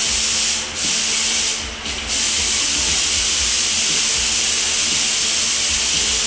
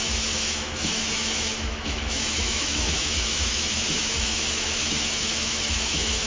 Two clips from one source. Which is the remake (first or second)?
second